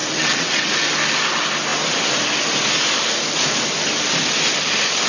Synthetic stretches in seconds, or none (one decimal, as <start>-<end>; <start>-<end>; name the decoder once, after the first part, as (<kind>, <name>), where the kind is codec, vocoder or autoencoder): 0.0-0.7 (vocoder, WaveNeXt)